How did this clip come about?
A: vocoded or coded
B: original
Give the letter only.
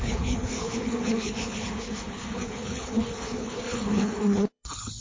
A